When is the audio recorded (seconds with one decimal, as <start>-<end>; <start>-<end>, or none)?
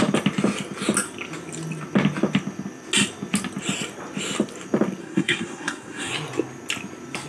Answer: 0.0-5.0; 6.1-7.3